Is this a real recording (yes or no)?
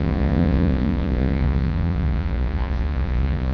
no